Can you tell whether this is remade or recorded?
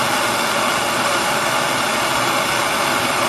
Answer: recorded